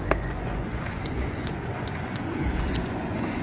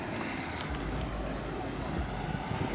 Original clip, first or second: second